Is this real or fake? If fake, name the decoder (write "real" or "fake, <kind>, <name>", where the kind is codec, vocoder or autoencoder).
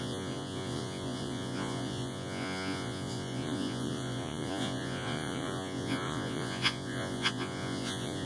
fake, vocoder, Vocos